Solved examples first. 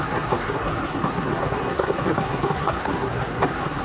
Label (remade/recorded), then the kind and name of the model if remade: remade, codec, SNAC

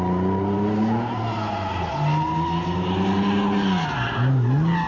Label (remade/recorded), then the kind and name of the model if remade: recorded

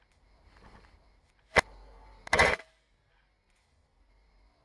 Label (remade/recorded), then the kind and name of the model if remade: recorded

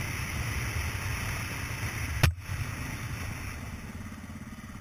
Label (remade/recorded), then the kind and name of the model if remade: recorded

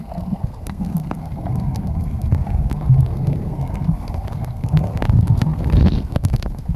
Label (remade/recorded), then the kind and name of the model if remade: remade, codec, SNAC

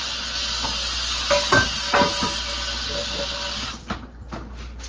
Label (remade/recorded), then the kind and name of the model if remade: recorded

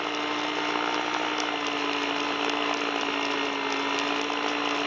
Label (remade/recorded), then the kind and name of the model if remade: recorded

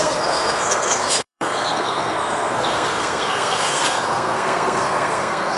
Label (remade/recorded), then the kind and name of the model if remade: remade, codec, SNAC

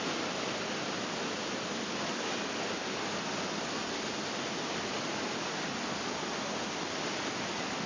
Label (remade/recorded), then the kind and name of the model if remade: recorded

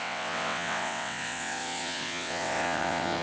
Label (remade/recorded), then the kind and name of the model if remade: remade, vocoder, WaveNeXt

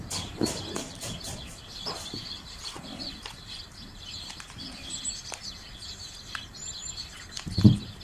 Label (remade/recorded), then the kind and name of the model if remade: recorded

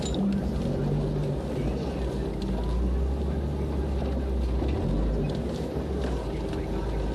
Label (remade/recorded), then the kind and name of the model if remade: recorded